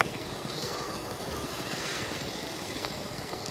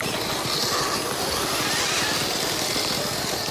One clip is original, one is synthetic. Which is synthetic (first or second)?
first